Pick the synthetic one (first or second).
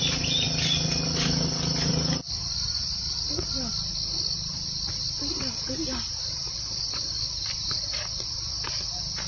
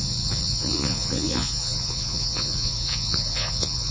second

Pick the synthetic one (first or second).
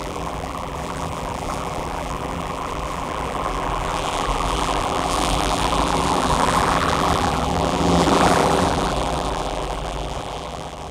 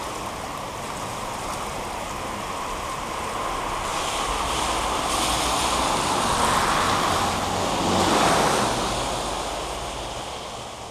first